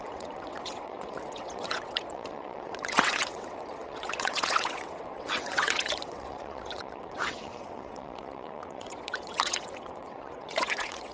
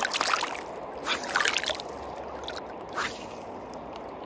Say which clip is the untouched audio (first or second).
second